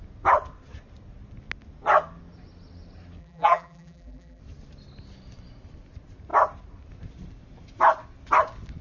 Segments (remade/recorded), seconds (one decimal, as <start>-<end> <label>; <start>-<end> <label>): 0.0-3.2 recorded; 3.2-4.4 remade; 4.4-8.8 recorded